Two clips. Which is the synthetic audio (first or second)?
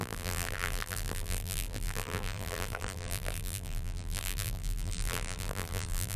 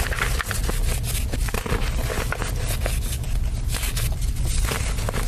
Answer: first